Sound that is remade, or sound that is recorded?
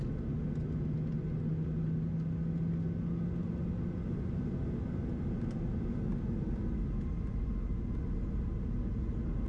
recorded